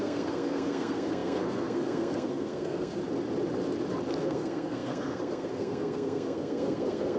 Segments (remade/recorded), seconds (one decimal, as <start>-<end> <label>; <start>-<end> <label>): 0.0-3.0 remade; 3.0-4.2 recorded; 4.2-7.2 remade